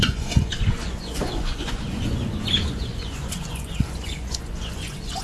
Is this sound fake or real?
fake